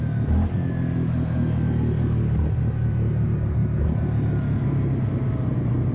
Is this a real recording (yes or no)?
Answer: yes